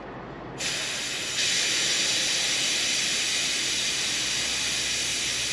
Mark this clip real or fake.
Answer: real